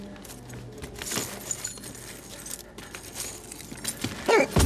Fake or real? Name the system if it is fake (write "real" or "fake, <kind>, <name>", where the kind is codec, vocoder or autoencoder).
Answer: real